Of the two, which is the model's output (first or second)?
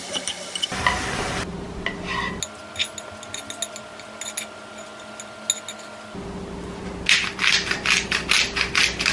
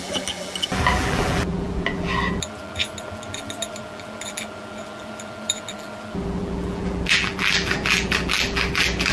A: second